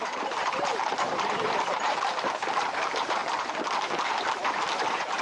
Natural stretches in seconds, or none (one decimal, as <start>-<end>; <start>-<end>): 3.2-4.1